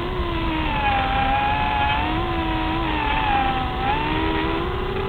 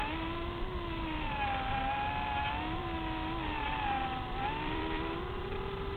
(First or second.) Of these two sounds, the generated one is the second